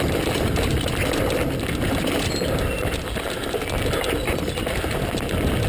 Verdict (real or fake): fake